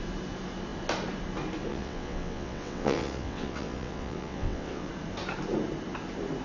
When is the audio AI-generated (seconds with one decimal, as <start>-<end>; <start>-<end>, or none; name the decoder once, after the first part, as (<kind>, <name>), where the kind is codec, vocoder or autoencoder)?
1.7-4.9 (vocoder, WaveNeXt)